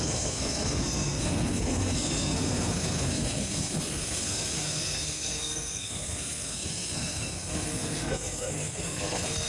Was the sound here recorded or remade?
remade